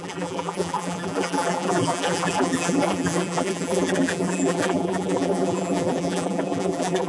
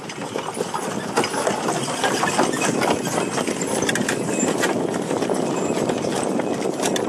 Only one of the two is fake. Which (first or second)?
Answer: first